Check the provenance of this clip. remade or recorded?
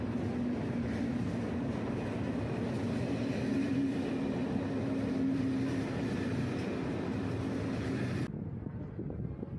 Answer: recorded